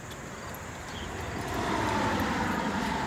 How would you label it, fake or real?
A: real